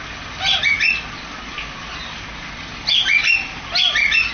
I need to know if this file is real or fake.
real